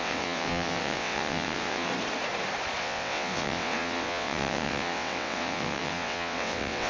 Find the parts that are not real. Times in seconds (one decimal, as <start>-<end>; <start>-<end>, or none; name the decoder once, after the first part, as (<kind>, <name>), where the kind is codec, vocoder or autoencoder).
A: 0.0-1.9 (vocoder, WaveNeXt); 2.8-6.9